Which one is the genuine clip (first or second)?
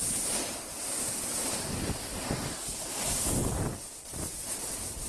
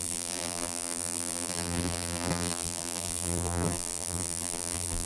first